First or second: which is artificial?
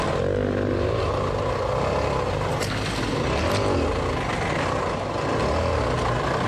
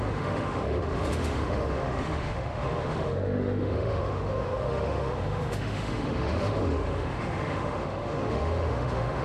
second